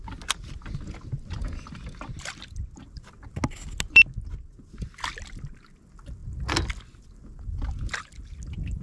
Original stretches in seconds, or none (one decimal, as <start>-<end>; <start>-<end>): 0.0-8.8